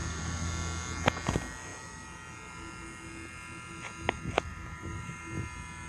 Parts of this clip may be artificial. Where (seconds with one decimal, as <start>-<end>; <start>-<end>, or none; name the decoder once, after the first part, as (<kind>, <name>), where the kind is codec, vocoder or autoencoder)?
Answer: 0.0-0.5 (vocoder, BigVGAN v2); 4.5-5.2